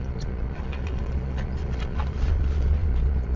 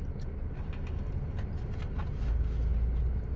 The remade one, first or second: first